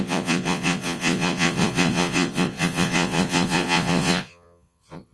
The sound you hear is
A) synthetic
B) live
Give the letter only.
A